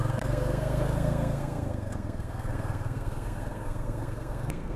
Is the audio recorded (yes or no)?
no